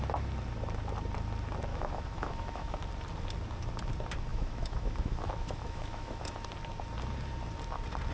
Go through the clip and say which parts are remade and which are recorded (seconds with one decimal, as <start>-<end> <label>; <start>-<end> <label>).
0.0-1.7 recorded; 1.7-2.8 remade; 2.8-4.3 recorded; 4.3-6.2 remade; 6.2-8.1 recorded